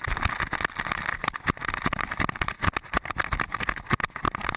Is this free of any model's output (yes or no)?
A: yes